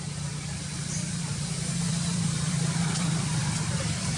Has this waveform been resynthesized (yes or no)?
yes